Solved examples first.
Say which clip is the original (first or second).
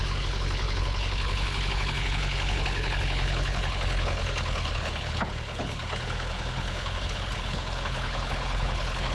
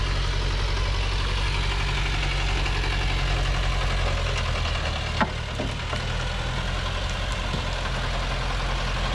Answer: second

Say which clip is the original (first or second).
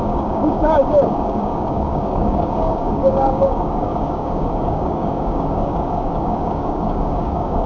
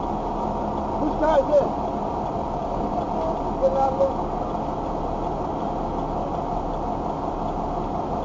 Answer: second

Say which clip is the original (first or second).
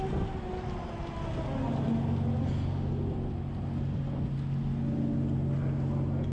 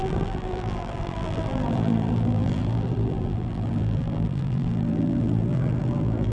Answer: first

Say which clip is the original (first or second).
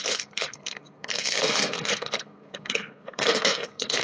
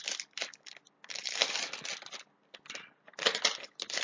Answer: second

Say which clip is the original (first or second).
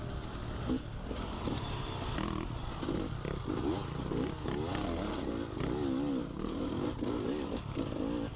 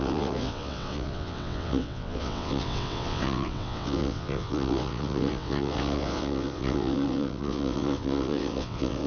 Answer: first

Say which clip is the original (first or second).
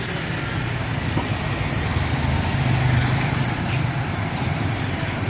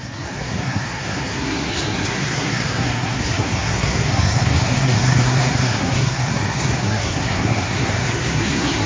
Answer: first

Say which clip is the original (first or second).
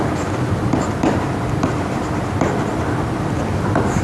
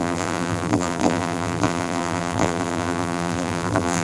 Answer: first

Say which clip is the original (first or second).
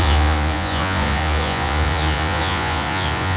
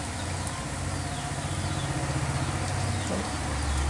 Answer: second